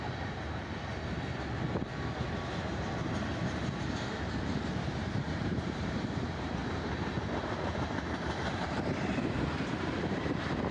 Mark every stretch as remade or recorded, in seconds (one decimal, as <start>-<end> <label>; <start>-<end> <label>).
0.0-0.9 remade; 0.9-5.2 recorded; 5.2-6.6 remade; 6.6-7.4 recorded; 7.4-10.7 remade